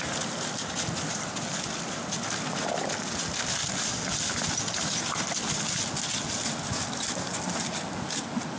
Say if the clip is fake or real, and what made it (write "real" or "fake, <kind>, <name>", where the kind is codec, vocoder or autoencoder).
real